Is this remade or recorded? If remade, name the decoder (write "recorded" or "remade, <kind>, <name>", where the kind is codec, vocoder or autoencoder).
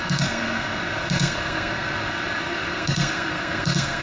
remade, codec, SNAC